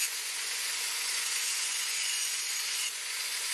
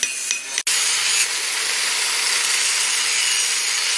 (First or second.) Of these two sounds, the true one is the second